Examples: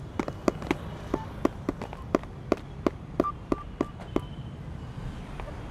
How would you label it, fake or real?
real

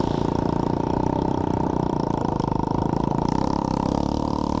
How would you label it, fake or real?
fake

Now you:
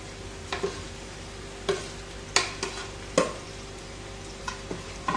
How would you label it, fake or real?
real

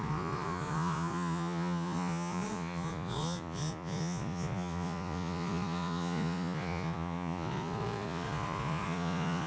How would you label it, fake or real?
fake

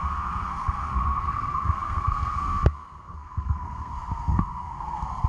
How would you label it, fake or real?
fake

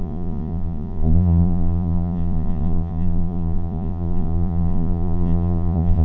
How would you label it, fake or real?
fake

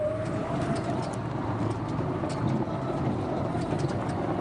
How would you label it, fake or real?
real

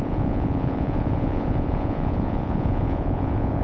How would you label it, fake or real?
fake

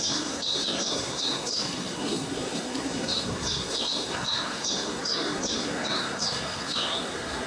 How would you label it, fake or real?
fake